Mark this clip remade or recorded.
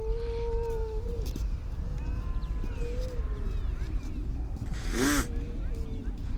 recorded